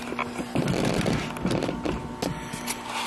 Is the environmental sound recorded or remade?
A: recorded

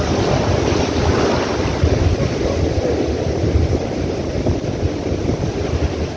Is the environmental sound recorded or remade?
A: recorded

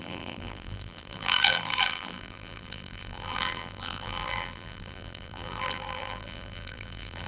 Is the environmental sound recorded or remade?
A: remade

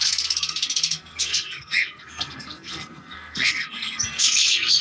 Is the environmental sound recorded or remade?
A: remade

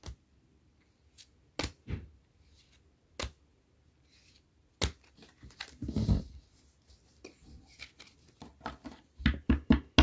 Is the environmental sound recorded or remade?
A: recorded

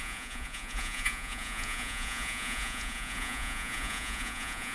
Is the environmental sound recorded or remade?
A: remade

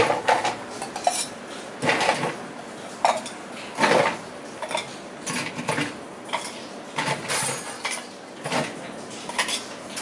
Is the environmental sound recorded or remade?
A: recorded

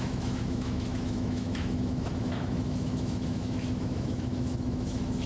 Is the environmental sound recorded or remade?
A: remade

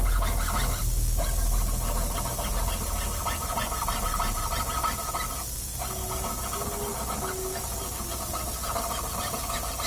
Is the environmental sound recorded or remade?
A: recorded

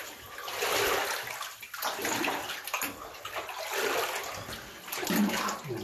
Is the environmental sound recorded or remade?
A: recorded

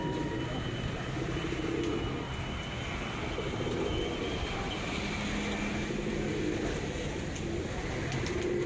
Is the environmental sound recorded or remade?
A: recorded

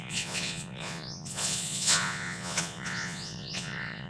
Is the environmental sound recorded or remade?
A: remade